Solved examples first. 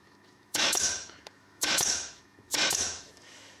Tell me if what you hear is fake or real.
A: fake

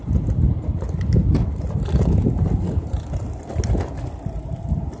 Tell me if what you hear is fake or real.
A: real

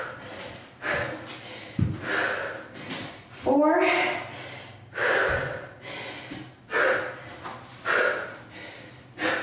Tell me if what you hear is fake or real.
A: real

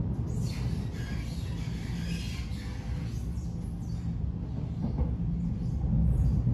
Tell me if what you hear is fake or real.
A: real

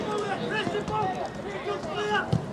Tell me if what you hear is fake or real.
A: real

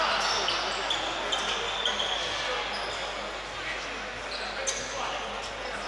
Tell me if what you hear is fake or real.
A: real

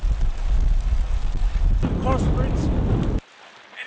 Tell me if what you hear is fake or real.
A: real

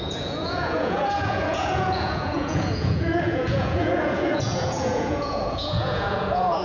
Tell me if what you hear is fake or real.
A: fake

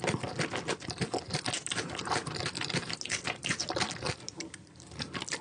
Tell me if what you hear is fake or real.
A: real